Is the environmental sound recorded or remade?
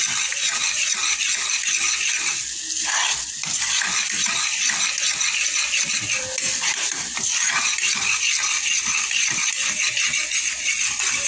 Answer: recorded